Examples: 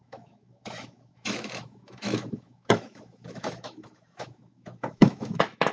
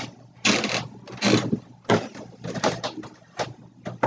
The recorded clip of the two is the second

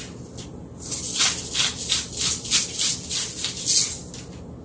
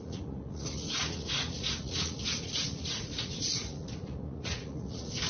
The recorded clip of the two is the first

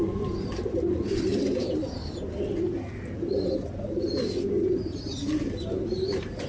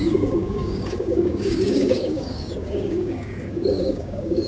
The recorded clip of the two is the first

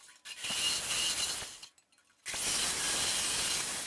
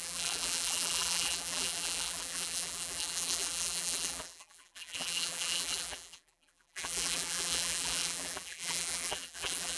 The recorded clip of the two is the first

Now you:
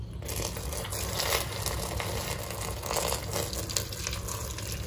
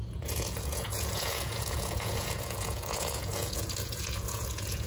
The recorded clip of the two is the first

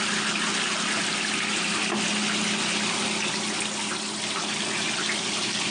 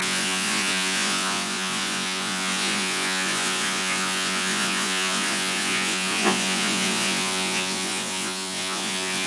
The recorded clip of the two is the first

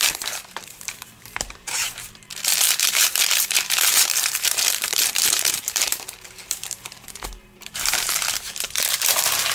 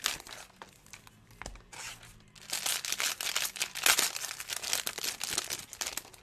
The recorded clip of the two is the second